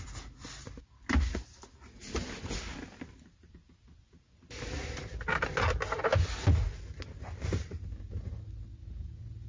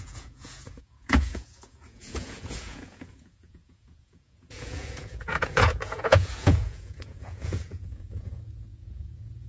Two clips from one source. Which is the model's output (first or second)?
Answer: second